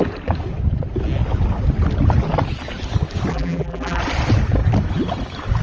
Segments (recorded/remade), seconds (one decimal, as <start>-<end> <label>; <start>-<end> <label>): 0.0-3.3 recorded; 3.3-4.0 remade; 4.0-5.6 recorded